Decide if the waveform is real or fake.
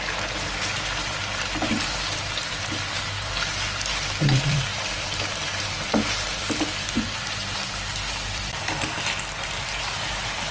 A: fake